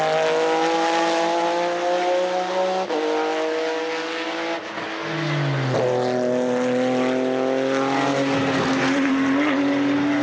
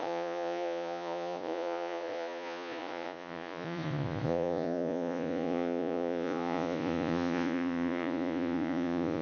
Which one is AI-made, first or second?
second